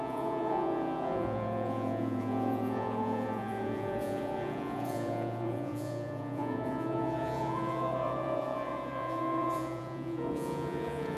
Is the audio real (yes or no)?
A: no